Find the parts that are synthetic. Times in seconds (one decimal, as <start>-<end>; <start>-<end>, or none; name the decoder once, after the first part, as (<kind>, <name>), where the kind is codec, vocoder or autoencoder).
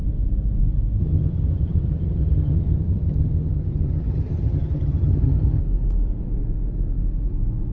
1.0-5.6 (vocoder, HiFi-GAN)